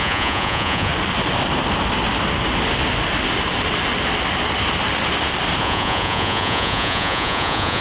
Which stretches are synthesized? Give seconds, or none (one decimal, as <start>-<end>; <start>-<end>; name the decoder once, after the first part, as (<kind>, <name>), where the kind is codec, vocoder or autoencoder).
0.0-0.9 (vocoder, Vocos); 5.6-7.8